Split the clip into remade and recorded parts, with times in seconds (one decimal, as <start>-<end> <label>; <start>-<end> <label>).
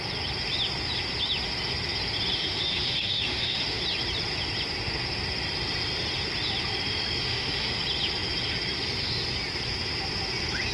0.0-2.4 recorded; 2.4-3.8 remade; 3.8-7.2 recorded; 7.2-7.8 remade; 7.8-10.7 recorded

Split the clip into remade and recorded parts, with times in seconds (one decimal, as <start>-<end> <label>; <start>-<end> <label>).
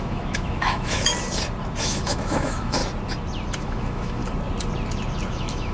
0.0-1.1 remade; 1.1-1.8 recorded; 1.8-2.8 remade; 2.8-3.6 recorded; 3.6-4.2 remade; 4.2-5.3 recorded; 5.3-5.7 remade